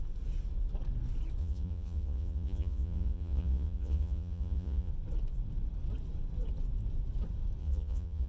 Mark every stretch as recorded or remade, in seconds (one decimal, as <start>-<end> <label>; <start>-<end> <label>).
0.0-1.4 recorded; 1.4-4.9 remade; 4.9-7.6 recorded; 7.6-8.3 remade